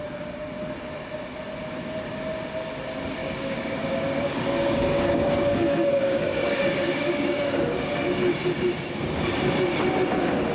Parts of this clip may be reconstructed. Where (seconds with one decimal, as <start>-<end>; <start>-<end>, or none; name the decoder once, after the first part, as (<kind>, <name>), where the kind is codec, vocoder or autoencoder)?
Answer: 3.2-7.6 (codec, DAC)